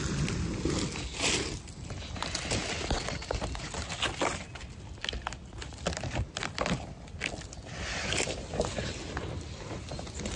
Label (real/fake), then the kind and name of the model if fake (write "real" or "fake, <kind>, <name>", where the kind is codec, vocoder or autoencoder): real